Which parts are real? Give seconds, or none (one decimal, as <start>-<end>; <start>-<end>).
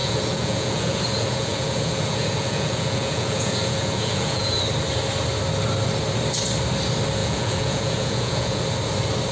4.6-7.2; 8.6-9.3